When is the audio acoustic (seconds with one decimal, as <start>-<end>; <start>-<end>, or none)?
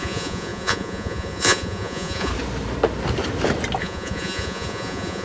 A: 2.3-3.8